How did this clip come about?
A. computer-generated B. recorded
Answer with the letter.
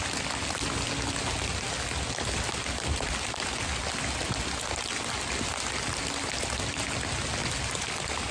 B